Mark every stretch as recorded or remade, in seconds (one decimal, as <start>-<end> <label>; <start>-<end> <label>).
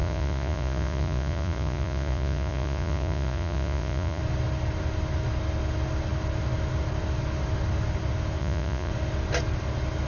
0.0-4.2 remade; 4.2-8.4 recorded; 8.4-8.9 remade; 8.9-10.1 recorded